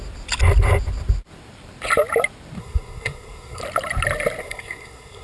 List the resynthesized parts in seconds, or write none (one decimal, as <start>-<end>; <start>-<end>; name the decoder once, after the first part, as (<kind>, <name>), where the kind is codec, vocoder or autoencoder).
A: 2.6-3.6 (codec, SNAC); 4.4-5.2